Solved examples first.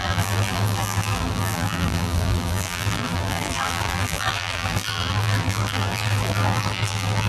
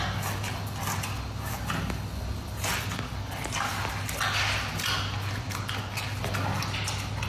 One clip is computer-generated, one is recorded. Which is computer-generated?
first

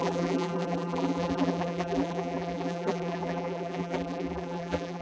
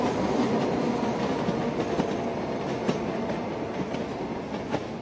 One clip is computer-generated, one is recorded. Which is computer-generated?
first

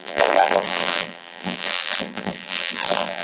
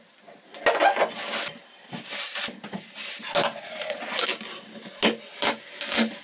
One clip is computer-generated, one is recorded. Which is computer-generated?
first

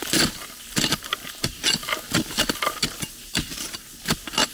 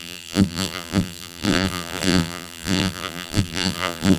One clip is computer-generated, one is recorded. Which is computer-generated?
second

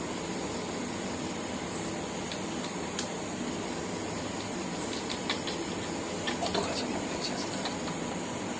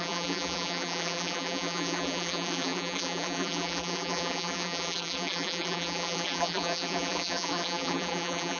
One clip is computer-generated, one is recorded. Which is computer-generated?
second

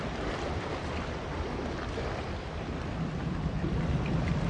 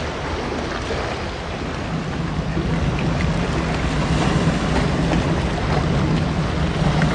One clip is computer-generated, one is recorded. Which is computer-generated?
first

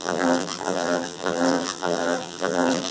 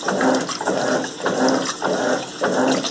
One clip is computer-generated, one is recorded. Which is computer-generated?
first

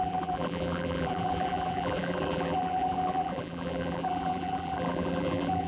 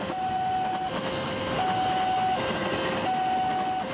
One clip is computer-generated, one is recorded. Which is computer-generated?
first